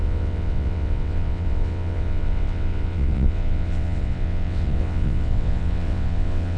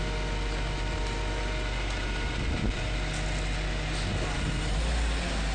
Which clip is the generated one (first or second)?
first